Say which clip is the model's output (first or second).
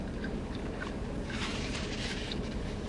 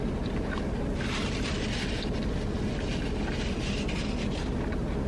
first